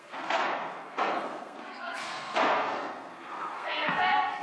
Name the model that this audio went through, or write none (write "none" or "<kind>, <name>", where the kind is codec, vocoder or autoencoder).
codec, SNAC